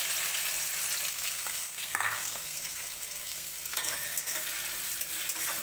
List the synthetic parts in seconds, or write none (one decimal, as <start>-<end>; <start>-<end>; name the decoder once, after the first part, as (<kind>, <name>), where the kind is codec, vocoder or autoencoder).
1.1-4.5 (codec, SNAC)

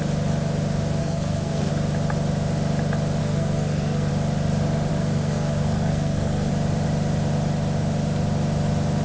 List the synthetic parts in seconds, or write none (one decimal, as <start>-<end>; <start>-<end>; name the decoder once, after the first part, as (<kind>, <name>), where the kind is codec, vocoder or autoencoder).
1.0-1.7 (codec, SNAC); 3.2-4.1; 4.9-6.5

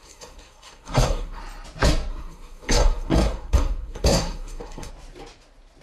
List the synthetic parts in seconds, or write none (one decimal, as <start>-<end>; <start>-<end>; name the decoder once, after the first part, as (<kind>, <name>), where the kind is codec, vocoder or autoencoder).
0.0-1.4 (codec, SNAC); 2.1-4.9

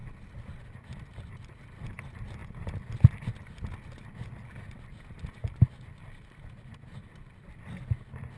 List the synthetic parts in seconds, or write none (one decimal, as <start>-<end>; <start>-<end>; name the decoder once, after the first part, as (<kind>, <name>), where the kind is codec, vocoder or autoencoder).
none